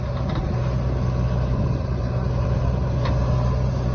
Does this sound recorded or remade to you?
recorded